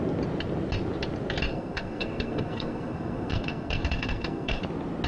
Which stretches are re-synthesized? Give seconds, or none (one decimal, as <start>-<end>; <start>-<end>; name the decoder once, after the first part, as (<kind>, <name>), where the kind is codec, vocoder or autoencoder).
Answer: 1.5-4.6 (codec, SNAC)